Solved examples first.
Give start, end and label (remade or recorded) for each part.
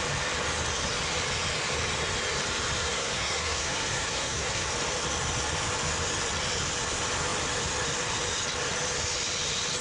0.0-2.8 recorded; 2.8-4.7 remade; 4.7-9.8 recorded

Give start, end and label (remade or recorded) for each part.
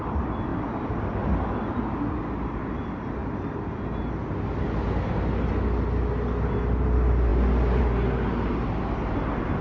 0.0-9.6 recorded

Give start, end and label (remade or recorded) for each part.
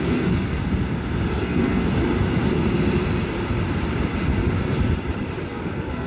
0.0-0.6 remade; 0.6-1.3 recorded; 1.3-1.8 remade; 1.8-5.5 recorded; 5.5-6.1 remade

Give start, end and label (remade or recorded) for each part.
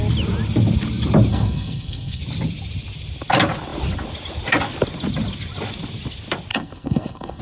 0.0-1.3 recorded; 1.3-2.2 remade; 2.2-6.5 recorded; 6.5-7.4 remade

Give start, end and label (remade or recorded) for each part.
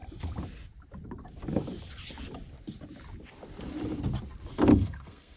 0.0-4.7 recorded; 4.7-5.4 remade